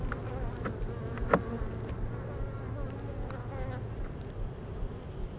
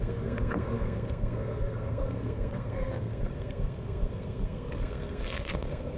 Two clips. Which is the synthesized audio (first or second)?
second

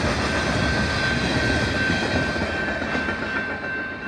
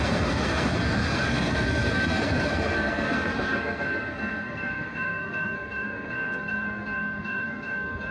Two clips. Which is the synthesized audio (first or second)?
second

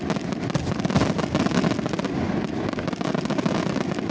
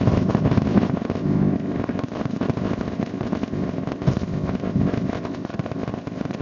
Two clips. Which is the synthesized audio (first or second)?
second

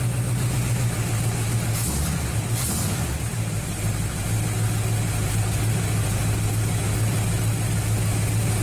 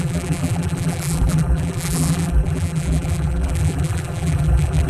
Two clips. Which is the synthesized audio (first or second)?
second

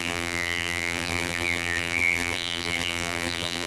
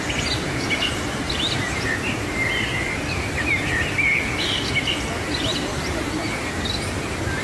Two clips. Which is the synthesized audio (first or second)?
first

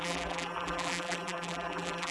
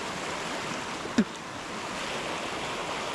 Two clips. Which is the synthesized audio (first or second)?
first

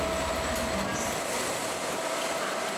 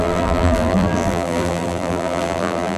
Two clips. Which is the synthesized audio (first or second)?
second